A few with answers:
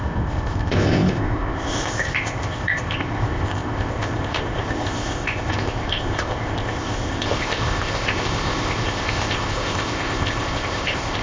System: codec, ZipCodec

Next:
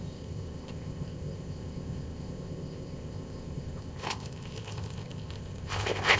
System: codec, ZipCodec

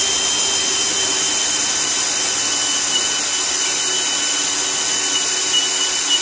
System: none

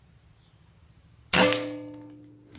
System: none